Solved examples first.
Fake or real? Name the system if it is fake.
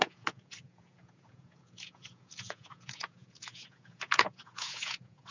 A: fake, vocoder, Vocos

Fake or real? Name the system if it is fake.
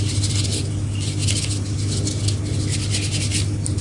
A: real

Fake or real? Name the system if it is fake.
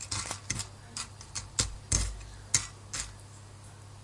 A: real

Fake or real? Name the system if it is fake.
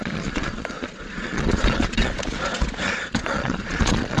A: fake, vocoder, Vocos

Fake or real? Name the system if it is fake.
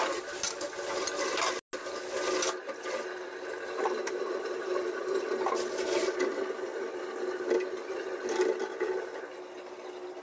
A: real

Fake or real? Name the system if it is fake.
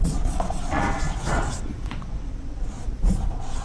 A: fake, vocoder, Vocos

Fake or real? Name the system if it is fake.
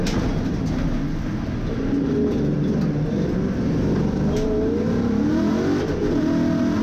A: real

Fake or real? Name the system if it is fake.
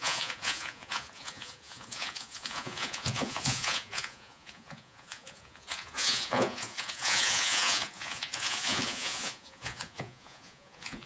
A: fake, vocoder, Vocos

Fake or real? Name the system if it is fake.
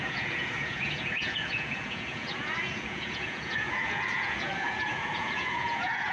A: fake, vocoder, Vocos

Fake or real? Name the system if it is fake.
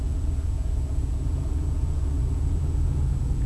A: fake, vocoder, Vocos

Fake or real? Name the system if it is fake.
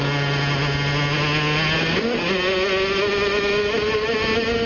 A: real